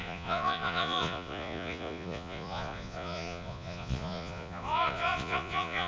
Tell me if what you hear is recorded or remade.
remade